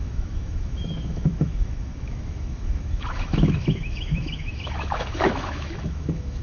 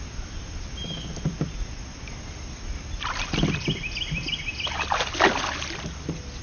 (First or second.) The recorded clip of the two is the second